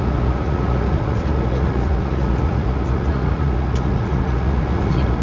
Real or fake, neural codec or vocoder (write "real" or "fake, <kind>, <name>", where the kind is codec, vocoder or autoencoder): fake, vocoder, Vocos